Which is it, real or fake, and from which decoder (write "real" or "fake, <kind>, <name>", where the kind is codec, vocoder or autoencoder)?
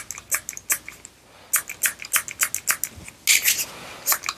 real